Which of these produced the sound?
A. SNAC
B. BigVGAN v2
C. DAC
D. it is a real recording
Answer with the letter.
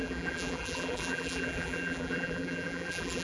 B